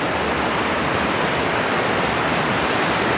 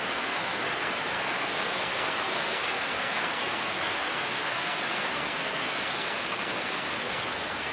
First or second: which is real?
first